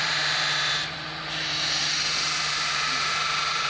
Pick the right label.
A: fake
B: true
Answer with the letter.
A